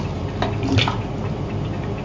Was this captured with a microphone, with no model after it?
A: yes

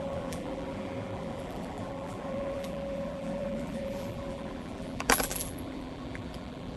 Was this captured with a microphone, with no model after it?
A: no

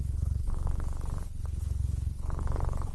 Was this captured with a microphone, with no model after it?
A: no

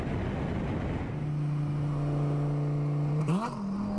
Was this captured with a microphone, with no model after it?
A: yes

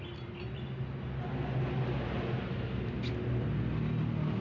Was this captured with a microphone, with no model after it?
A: yes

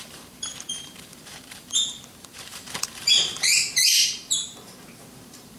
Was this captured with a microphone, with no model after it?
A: no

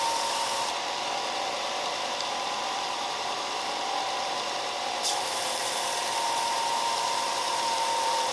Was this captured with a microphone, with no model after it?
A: no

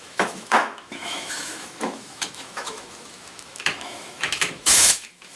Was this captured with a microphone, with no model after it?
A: no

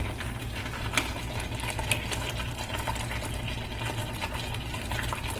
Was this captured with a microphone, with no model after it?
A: yes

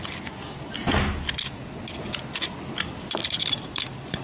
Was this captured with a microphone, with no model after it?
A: yes